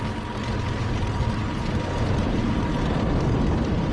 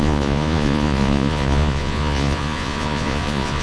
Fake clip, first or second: second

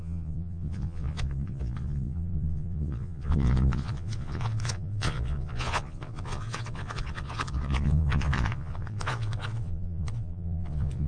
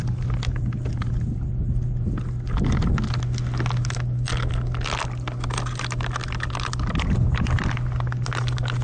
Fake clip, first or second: first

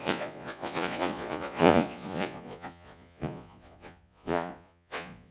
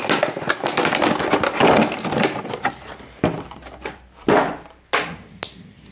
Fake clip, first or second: first